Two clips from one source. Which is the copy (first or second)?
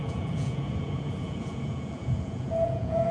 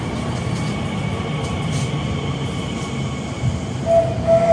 first